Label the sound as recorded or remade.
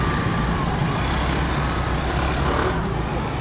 recorded